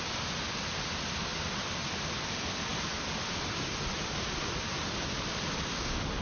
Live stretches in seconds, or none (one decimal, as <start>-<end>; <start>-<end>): 0.0-6.2